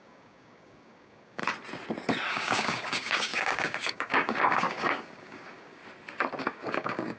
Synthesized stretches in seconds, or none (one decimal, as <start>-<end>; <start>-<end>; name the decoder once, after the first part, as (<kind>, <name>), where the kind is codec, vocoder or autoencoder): 0.0-1.4 (codec, DAC); 2.3-5.8; 6.4-7.2